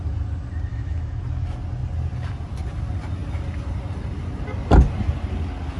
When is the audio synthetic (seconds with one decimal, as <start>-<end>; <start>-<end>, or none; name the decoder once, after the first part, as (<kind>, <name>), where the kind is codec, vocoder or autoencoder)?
0.7-1.2 (autoencoder, DAC-VAE)